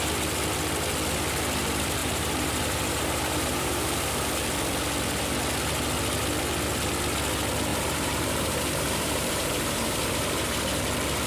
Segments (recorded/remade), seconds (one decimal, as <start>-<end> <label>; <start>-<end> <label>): 0.0-2.0 recorded; 2.0-3.9 remade; 3.9-7.7 recorded; 7.7-10.8 remade; 10.8-11.3 recorded